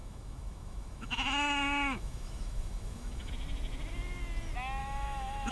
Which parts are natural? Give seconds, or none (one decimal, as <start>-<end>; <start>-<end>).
3.3-4.8